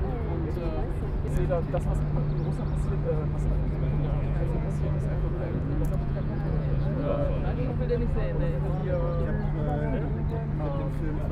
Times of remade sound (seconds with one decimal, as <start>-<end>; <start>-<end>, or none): 3.9-7.7